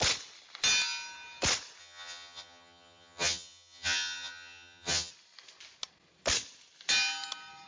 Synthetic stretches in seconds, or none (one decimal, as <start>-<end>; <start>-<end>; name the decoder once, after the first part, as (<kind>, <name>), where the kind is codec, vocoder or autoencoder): 1.8-5.1 (vocoder, HiFi-GAN)